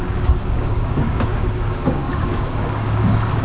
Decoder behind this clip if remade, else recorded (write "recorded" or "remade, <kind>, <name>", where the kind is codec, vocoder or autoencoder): remade, codec, DAC